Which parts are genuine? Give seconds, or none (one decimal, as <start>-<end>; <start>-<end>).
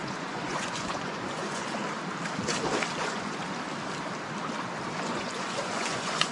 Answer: 1.8-3.0; 3.4-4.9